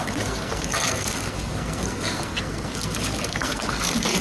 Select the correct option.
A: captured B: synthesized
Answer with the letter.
B